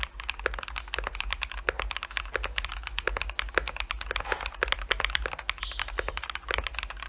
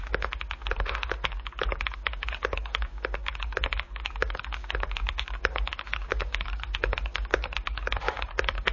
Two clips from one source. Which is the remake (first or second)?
second